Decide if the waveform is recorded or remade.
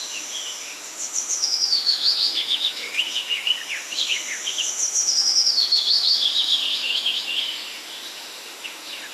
remade